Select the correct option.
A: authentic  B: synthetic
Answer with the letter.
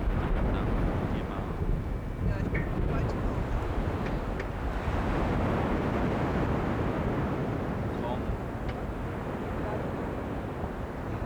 A